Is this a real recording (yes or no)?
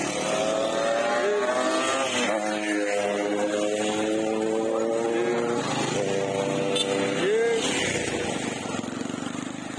yes